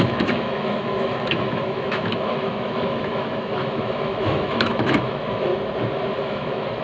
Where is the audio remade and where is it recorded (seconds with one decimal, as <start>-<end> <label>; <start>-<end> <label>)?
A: 0.0-5.5 remade; 5.5-6.2 recorded; 6.2-6.8 remade